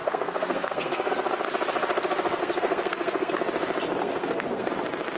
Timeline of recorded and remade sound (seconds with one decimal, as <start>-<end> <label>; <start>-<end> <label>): 0.0-1.1 remade; 1.1-2.4 recorded; 2.4-3.3 remade; 3.3-4.0 recorded; 4.0-4.7 remade; 4.7-5.2 recorded